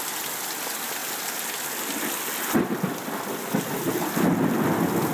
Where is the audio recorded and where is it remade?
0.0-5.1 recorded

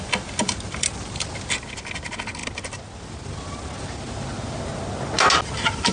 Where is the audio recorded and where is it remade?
0.0-5.9 recorded

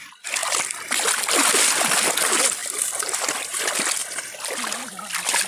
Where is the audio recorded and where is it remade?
0.0-2.6 recorded; 2.6-3.2 remade; 3.2-4.0 recorded; 4.0-5.5 remade

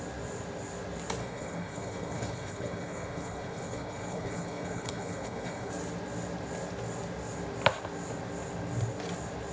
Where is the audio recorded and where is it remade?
0.0-1.2 recorded; 1.2-5.7 remade; 5.7-9.5 recorded

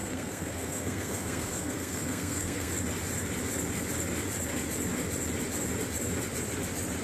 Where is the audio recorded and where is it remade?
0.0-2.7 remade; 2.7-7.0 recorded

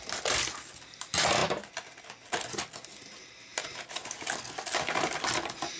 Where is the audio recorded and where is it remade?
0.0-5.8 recorded